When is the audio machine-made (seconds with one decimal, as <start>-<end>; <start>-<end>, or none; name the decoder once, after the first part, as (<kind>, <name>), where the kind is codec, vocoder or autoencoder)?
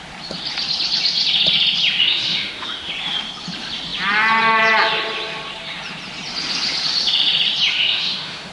2.0-2.9 (autoencoder, DAC-VAE); 7.7-8.5